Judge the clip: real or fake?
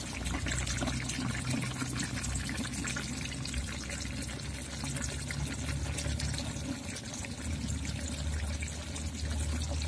real